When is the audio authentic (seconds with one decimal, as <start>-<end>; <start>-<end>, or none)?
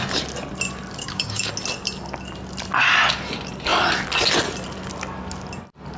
0.0-1.0; 1.5-6.0